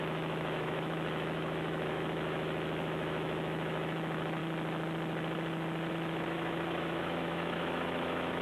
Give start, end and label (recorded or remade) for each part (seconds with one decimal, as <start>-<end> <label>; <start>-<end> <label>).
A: 0.0-4.4 remade; 4.4-5.9 recorded; 5.9-8.4 remade

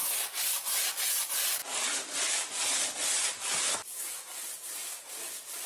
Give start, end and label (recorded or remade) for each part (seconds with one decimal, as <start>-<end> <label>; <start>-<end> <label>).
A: 0.0-1.6 recorded; 1.6-2.4 remade; 2.4-4.8 recorded; 4.8-5.7 remade

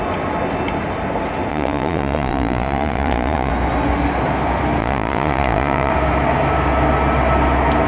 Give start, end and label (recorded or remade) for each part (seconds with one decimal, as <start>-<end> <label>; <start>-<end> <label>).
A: 0.0-1.5 recorded; 1.5-3.5 remade; 3.5-4.8 recorded; 4.8-5.9 remade; 5.9-7.9 recorded

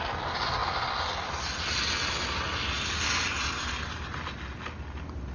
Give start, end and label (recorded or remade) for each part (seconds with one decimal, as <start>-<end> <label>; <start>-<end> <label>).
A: 0.0-5.3 recorded

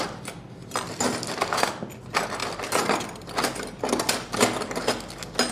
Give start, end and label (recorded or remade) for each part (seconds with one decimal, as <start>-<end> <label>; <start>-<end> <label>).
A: 0.0-0.6 recorded; 0.6-1.8 remade; 1.8-2.4 recorded; 2.4-3.8 remade; 3.8-5.5 recorded

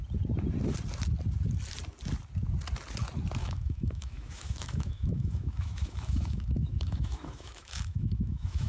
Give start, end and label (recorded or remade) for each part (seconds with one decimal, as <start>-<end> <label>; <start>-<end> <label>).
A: 0.0-3.4 recorded; 3.4-8.7 remade

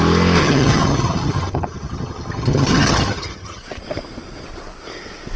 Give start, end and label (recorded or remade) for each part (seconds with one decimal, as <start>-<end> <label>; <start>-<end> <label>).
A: 0.0-0.4 recorded; 0.4-3.6 remade; 3.6-5.4 recorded

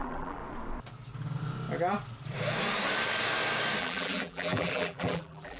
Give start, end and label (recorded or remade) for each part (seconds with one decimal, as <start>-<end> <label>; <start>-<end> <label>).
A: 0.0-0.4 remade; 0.4-3.8 recorded; 3.8-5.6 remade